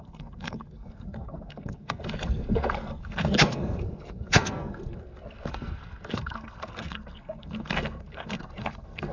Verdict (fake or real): fake